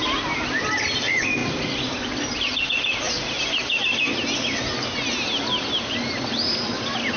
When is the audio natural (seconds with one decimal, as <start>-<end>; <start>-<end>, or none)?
0.0-7.2